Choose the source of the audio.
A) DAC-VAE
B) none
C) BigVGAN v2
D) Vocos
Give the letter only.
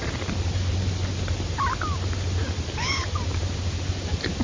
B